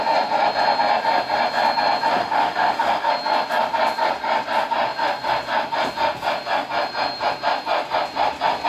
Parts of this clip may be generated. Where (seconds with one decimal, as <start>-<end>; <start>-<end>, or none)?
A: 2.2-3.1